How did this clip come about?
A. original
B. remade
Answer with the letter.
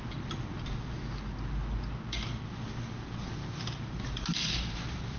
A